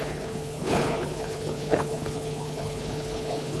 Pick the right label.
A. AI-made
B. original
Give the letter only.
A